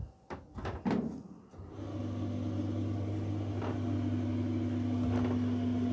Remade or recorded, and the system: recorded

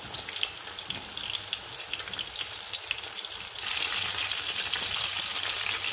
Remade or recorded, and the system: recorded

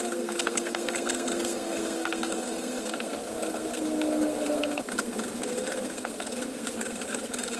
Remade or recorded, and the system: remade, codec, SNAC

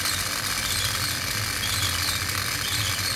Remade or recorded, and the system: recorded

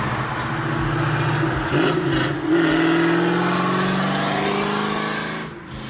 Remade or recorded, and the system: recorded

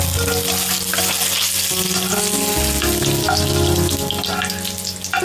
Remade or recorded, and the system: recorded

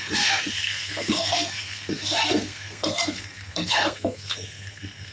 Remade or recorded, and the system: remade, codec, SNAC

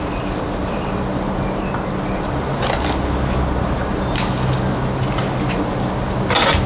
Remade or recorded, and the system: recorded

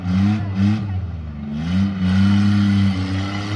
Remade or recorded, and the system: recorded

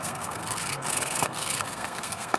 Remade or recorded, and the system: remade, codec, SNAC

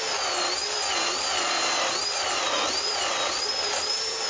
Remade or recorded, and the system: recorded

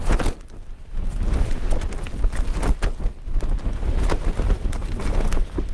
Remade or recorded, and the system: recorded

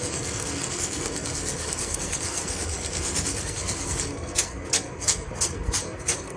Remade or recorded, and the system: remade, codec, SNAC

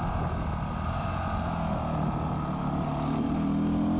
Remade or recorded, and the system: recorded